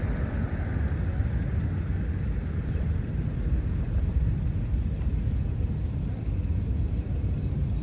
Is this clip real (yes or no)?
yes